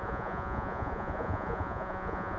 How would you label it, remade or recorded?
remade